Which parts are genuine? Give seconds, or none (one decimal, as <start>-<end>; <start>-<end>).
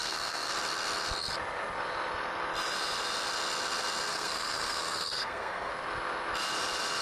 0.5-4.1; 5.7-7.0